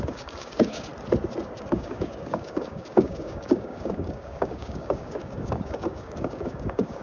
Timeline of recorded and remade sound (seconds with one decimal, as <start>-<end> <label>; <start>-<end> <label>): 0.0-0.9 remade; 0.9-1.7 recorded; 1.7-7.0 remade